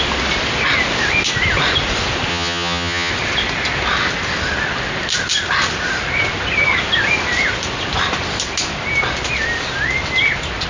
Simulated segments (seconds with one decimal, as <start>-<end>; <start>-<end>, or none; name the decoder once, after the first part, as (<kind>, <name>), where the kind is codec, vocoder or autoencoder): 2.3-3.1 (vocoder, HiFi-GAN)